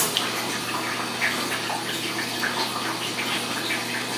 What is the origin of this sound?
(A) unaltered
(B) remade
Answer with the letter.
A